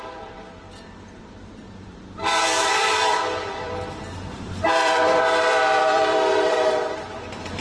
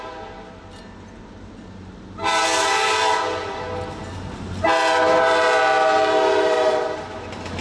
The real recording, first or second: second